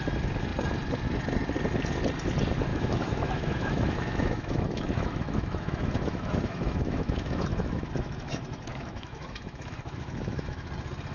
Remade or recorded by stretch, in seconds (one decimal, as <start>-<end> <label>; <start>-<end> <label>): 0.0-2.7 recorded; 2.7-7.9 remade; 7.9-8.7 recorded; 8.7-10.7 remade; 10.7-11.1 recorded